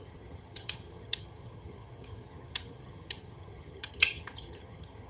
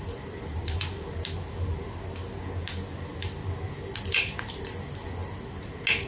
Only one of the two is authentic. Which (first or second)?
second